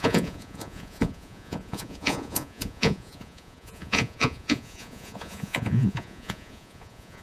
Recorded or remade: remade